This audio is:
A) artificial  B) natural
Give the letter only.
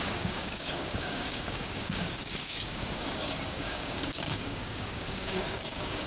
A